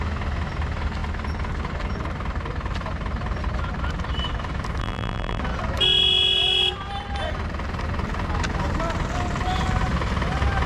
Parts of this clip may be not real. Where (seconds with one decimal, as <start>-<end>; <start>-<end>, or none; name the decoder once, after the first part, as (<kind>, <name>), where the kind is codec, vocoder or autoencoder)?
4.8-5.4 (vocoder, BigVGAN v2)